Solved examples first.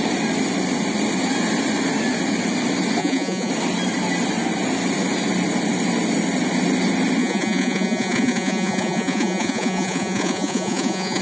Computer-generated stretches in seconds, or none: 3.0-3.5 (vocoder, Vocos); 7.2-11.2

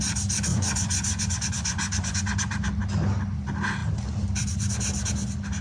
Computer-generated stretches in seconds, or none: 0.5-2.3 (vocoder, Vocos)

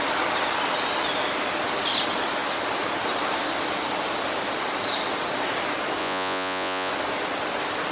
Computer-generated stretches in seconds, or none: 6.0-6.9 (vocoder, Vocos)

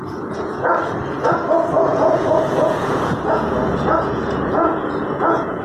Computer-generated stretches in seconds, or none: 0.0-0.7 (vocoder, Vocos); 1.9-5.6

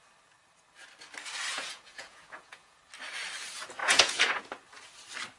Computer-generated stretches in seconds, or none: 1.5-2.8 (vocoder, Vocos); 3.8-4.4